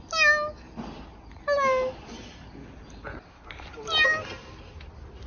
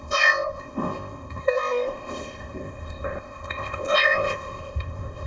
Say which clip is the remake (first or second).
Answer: second